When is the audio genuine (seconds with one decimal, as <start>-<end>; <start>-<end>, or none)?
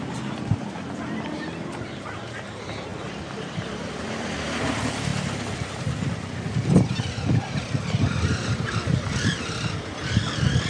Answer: none